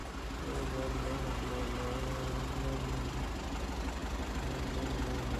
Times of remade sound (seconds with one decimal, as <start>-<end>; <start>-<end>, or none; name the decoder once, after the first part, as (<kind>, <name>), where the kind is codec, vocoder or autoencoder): none